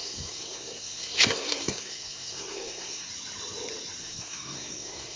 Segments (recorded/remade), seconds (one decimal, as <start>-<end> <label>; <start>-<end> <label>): 0.0-3.1 remade; 3.1-4.0 recorded; 4.0-5.2 remade